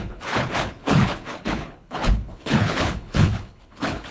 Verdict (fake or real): fake